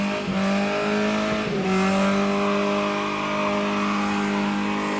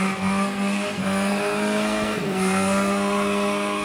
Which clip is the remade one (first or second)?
second